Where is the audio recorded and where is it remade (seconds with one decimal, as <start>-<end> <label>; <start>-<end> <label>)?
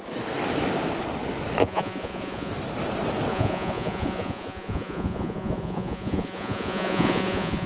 0.0-1.6 recorded; 1.6-2.5 remade; 2.5-3.3 recorded; 3.3-7.7 remade